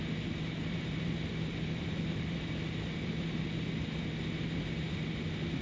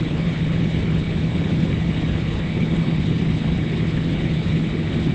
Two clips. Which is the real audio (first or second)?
first